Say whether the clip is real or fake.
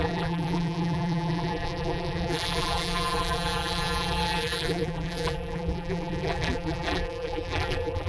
fake